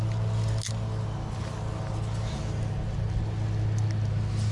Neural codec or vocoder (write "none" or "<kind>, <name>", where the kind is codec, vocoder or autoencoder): none